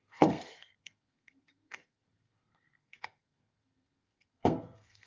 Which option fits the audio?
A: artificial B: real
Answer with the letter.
A